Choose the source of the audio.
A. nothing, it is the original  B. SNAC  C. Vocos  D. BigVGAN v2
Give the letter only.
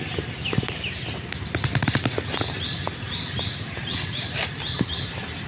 A